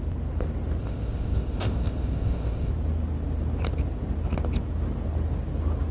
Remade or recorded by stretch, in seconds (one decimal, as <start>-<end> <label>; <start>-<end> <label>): 0.0-0.8 recorded; 0.8-2.7 remade; 2.7-5.9 recorded